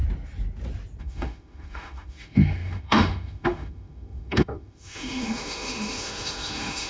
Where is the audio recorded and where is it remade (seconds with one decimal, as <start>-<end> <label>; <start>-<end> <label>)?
0.0-1.0 recorded; 1.0-6.9 remade